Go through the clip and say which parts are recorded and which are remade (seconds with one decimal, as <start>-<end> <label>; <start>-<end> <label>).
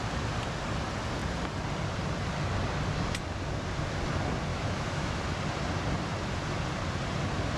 0.0-4.5 recorded; 4.5-5.2 remade; 5.2-7.6 recorded